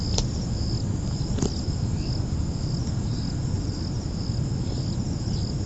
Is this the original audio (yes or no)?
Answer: yes